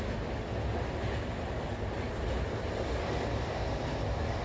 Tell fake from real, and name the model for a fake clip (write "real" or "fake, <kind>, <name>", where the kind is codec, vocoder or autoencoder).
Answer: real